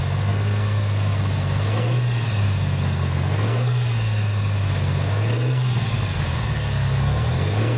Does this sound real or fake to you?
fake